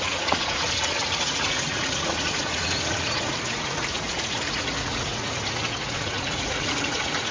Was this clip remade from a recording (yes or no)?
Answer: yes